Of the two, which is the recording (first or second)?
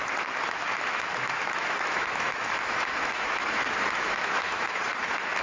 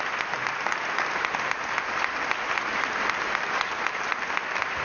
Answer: second